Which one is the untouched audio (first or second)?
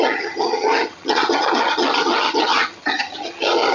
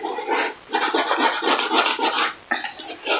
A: second